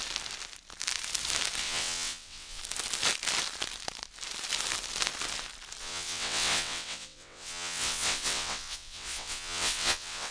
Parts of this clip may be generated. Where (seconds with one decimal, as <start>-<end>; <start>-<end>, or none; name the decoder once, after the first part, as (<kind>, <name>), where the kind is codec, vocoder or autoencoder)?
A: 1.6-2.6 (vocoder, WaveNeXt); 5.8-10.3